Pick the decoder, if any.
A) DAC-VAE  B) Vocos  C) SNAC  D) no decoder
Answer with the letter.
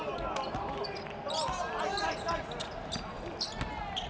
D